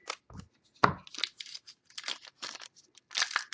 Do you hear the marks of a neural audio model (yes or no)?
no